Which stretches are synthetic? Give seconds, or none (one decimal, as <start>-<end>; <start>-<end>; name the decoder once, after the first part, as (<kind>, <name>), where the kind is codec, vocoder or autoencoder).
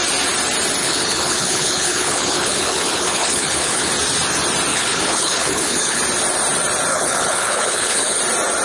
0.8-3.9 (codec, HILCodec); 4.7-6.0; 6.9-8.2